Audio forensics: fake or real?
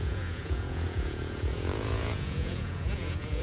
fake